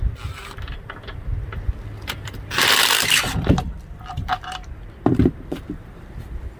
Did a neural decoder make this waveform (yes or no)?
yes